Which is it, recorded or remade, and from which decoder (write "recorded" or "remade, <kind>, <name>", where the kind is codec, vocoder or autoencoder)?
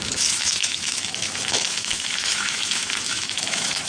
remade, autoencoder, DAC-VAE